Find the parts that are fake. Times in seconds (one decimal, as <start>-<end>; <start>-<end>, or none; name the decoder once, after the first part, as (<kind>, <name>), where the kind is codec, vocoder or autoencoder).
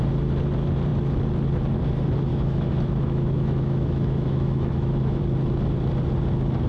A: 2.3-5.2 (autoencoder, DAC-VAE)